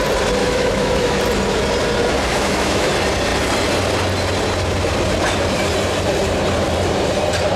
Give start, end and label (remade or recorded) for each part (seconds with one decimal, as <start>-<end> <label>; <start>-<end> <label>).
0.0-0.4 recorded; 0.4-1.2 remade; 1.2-2.3 recorded; 2.3-2.9 remade; 2.9-7.6 recorded